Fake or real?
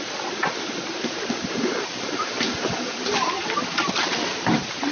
real